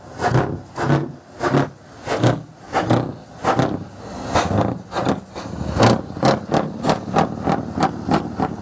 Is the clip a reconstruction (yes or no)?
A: no